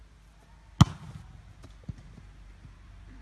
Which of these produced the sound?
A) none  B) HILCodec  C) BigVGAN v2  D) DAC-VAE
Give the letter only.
A